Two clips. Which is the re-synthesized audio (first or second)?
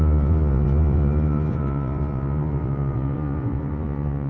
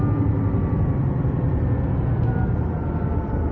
first